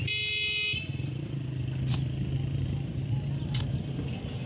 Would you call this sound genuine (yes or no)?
yes